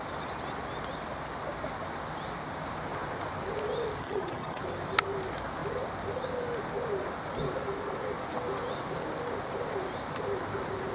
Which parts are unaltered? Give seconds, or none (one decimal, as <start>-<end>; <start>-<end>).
0.0-4.0; 4.6-10.9